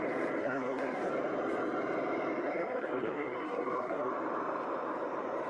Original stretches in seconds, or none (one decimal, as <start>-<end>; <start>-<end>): 0.0-0.4; 1.1-2.4; 4.1-5.5